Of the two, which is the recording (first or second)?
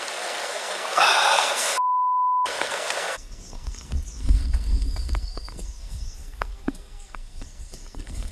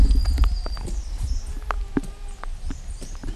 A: second